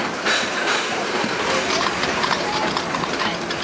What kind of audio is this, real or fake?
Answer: fake